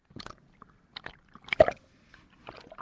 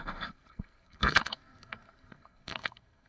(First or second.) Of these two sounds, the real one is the first